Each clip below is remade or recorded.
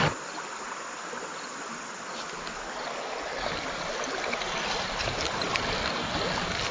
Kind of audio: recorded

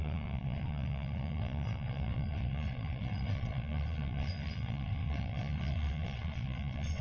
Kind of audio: remade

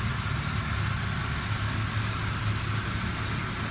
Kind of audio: recorded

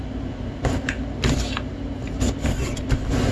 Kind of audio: recorded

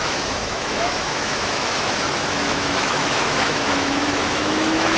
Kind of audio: remade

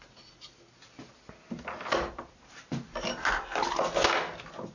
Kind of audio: recorded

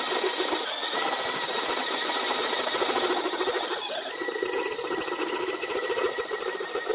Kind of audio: recorded